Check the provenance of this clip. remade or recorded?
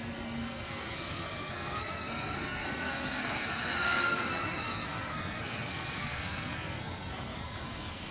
remade